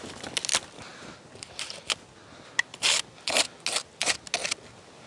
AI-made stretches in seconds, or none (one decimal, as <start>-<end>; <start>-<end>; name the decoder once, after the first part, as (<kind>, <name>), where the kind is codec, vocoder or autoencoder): none